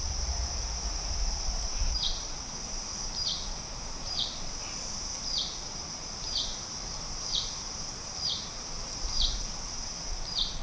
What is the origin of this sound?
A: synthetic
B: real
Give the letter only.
A